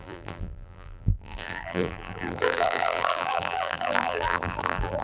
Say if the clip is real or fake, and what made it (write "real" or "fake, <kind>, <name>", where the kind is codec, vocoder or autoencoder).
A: fake, vocoder, BigVGAN v2